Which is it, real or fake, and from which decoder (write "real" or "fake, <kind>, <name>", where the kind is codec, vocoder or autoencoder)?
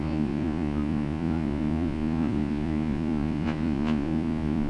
fake, vocoder, Vocos